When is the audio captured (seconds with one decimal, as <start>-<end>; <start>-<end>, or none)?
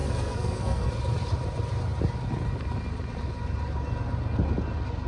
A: 0.9-5.1